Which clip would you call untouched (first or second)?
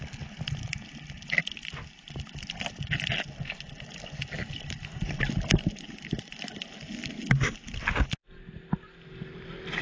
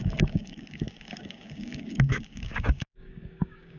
first